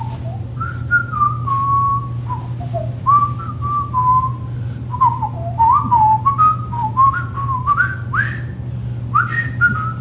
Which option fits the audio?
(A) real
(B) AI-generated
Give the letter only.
A